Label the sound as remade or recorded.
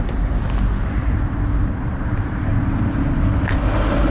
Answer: recorded